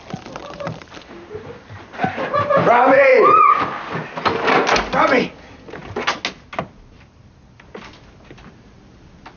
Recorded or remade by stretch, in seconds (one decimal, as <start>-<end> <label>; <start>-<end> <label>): 0.0-0.4 recorded; 0.4-2.7 remade; 2.7-9.4 recorded